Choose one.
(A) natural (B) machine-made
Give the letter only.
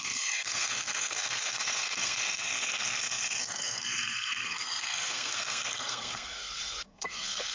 B